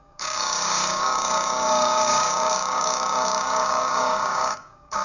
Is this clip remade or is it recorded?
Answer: remade